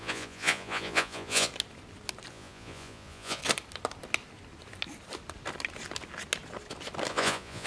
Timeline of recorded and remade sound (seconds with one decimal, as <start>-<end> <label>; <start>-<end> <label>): 0.0-1.5 remade; 1.5-2.3 recorded; 2.3-3.4 remade; 3.4-7.1 recorded; 7.1-7.7 remade